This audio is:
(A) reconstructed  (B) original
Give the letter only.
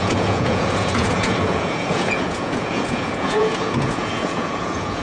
A